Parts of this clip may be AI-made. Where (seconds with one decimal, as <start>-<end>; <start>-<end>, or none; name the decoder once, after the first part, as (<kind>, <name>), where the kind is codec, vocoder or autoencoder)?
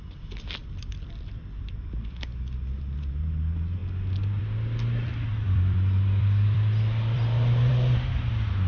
0.6-2.2 (vocoder, BigVGAN v2); 5.3-7.7